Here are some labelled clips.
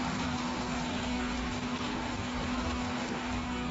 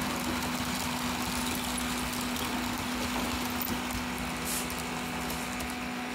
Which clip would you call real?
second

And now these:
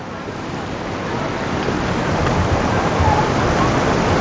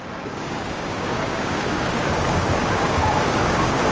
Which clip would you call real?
first